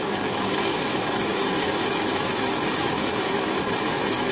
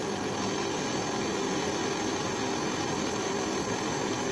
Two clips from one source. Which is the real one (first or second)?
second